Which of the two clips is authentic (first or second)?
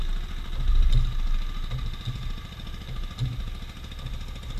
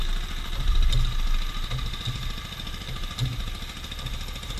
first